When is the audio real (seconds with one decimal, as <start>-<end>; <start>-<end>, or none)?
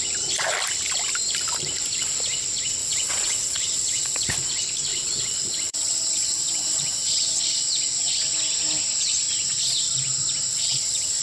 0.0-2.8; 4.3-4.9; 7.4-10.5